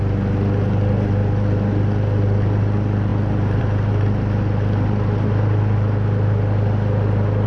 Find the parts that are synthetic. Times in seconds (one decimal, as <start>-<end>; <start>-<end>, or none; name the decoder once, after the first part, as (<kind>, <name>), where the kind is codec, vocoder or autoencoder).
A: none